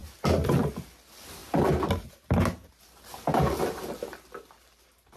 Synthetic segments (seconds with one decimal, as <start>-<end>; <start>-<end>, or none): none

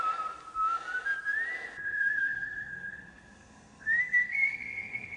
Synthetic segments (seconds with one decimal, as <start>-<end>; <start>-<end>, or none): 1.8-5.2

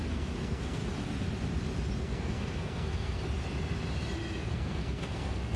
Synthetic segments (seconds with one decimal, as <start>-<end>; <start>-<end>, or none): 0.0-0.8; 2.0-3.2; 4.5-5.6

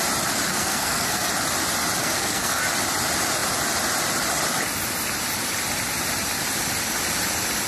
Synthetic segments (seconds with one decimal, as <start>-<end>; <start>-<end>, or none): 0.5-1.3; 2.0-2.6

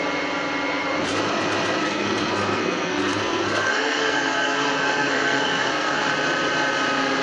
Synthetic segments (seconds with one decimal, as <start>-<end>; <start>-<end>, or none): 1.8-6.1

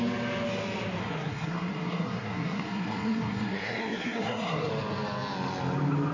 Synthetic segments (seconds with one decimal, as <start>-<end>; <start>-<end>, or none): 1.0-4.7